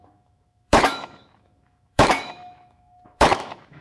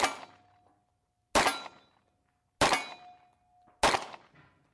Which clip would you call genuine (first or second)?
second